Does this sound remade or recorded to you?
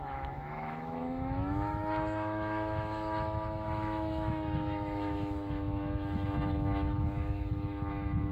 remade